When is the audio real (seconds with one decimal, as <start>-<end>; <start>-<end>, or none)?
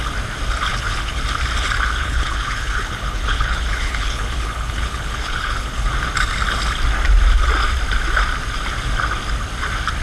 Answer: 0.0-0.7; 1.2-2.0; 5.9-10.0